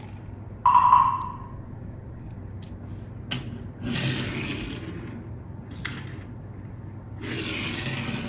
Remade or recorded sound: recorded